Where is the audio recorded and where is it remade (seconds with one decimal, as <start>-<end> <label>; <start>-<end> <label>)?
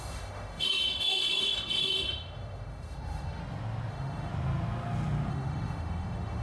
0.0-3.4 remade; 3.4-3.9 recorded; 3.9-4.3 remade; 4.3-5.3 recorded; 5.3-6.4 remade